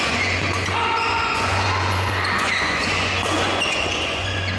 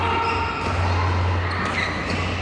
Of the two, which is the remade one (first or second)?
first